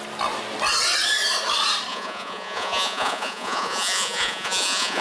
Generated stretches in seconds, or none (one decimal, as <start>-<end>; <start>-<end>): 1.9-5.0